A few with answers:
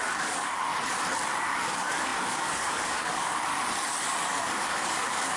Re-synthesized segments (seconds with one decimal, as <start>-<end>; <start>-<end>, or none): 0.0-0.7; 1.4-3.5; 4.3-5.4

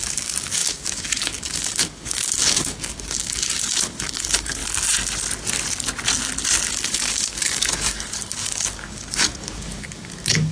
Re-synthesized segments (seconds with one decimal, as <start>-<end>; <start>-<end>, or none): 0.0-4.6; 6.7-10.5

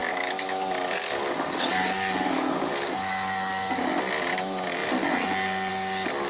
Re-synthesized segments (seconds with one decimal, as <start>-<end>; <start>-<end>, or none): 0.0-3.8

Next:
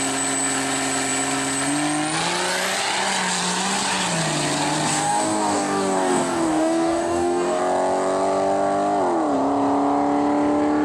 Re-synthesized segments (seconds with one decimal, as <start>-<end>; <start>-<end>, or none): 4.9-7.6

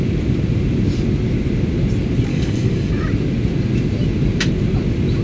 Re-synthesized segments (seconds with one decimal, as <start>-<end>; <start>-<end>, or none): 2.3-2.9